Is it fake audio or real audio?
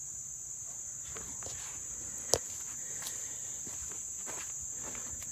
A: real